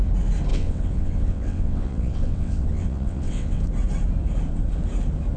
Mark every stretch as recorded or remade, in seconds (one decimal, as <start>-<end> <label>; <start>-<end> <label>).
0.0-0.5 recorded; 0.5-3.7 remade; 3.7-5.4 recorded